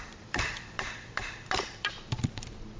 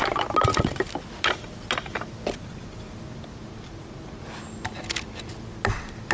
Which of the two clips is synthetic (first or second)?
first